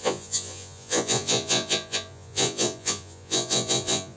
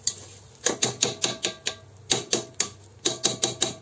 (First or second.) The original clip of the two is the second